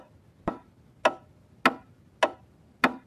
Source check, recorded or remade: recorded